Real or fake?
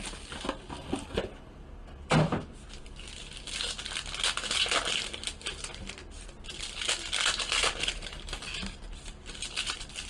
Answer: real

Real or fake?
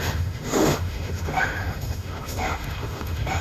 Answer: fake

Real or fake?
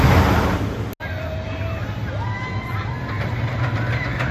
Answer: real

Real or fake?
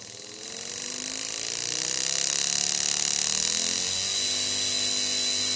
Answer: real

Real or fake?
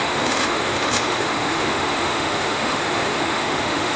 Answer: fake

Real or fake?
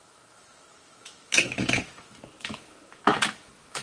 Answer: fake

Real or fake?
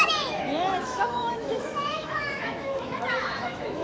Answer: fake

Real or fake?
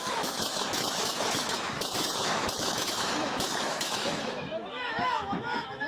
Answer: fake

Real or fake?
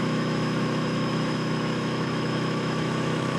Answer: fake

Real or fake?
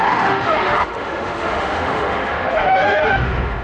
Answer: fake